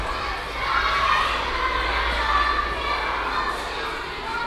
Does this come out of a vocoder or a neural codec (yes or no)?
no